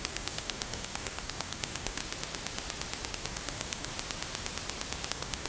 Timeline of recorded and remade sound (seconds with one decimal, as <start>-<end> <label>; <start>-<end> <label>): 0.0-2.0 remade; 2.0-3.1 recorded; 3.1-3.9 remade; 3.9-5.1 recorded; 5.1-5.5 remade